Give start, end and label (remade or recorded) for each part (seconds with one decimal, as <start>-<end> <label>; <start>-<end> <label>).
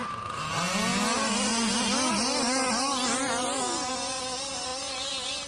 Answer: 0.0-5.5 recorded